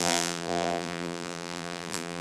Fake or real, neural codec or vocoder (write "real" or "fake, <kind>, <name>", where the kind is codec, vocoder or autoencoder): fake, vocoder, BigVGAN v2